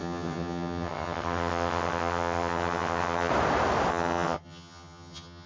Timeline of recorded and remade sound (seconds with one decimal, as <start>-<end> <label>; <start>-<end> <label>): 0.0-3.3 remade; 3.3-3.9 recorded; 3.9-5.5 remade

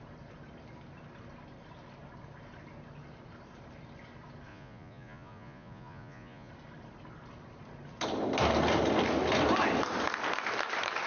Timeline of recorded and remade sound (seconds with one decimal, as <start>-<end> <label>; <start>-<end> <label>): 0.0-4.5 recorded; 4.5-6.5 remade; 6.5-11.1 recorded